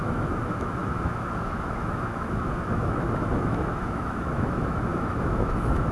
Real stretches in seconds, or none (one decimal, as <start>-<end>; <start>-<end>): none